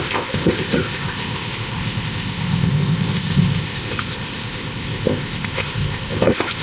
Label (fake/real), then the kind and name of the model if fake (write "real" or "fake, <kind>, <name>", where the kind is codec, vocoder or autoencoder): fake, codec, ZipCodec